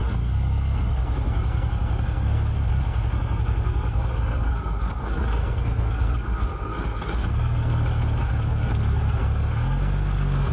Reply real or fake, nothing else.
fake